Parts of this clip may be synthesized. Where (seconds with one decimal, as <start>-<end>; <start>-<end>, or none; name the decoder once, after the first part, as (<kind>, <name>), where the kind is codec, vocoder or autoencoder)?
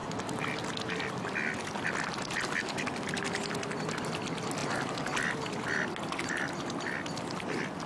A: none